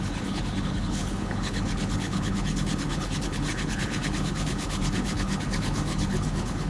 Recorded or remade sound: remade